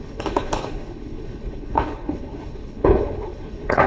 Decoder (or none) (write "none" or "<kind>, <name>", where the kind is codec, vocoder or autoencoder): codec, HILCodec